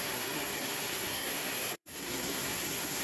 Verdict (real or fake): fake